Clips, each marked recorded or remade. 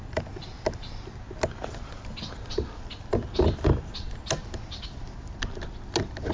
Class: recorded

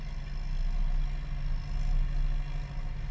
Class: recorded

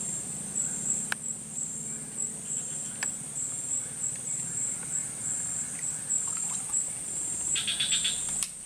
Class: recorded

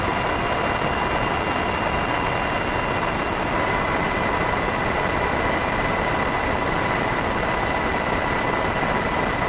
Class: recorded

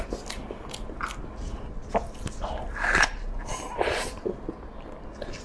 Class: recorded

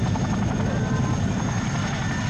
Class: recorded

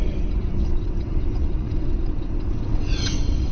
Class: remade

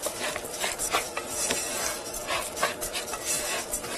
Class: remade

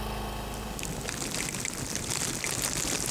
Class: recorded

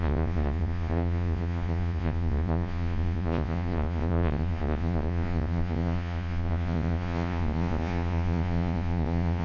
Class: remade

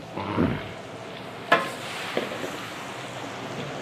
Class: recorded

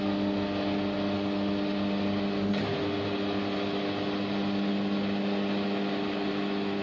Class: recorded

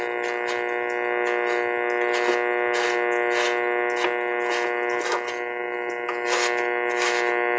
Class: recorded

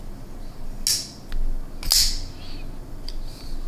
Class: recorded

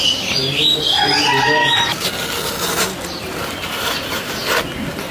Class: recorded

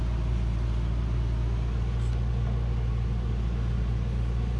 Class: recorded